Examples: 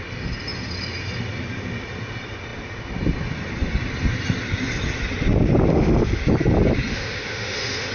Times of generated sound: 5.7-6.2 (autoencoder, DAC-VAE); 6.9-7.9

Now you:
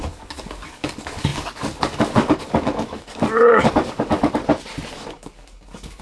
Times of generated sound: 0.0-4.4 (codec, DAC); 5.1-6.0

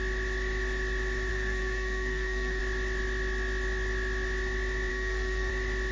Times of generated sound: 1.3-2.6 (codec, SNAC); 4.9-5.5

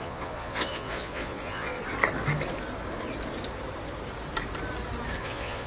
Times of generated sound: 0.0-1.8 (vocoder, Vocos); 5.2-5.7

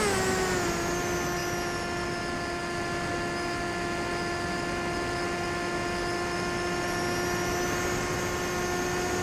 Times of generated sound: none

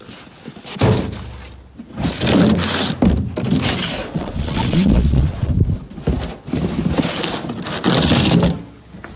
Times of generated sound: 4.0-5.5 (vocoder, Vocos)